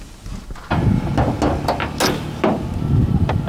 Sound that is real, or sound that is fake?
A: real